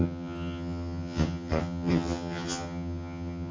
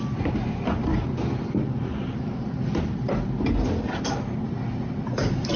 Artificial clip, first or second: first